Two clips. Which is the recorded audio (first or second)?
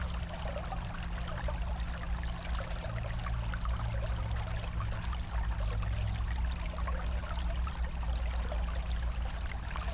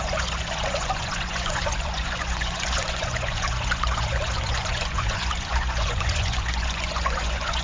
first